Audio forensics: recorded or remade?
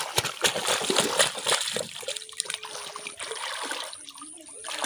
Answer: remade